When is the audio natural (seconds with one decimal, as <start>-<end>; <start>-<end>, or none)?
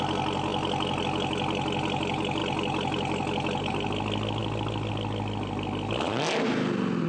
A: 0.0-7.1